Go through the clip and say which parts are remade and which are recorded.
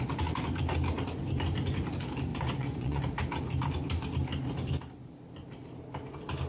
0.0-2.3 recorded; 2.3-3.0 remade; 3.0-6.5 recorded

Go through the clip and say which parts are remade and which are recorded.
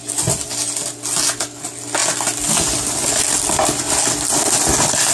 0.0-5.1 recorded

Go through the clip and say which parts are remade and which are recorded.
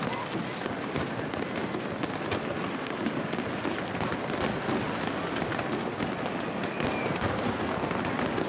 0.0-8.5 recorded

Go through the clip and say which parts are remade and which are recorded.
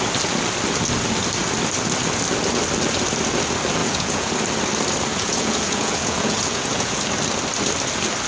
0.0-3.8 recorded; 3.8-4.3 remade; 4.3-5.1 recorded; 5.1-7.0 remade; 7.0-8.3 recorded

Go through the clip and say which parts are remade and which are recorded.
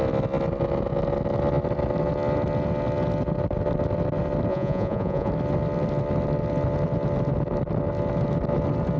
0.0-4.5 recorded; 4.5-5.3 remade; 5.3-9.0 recorded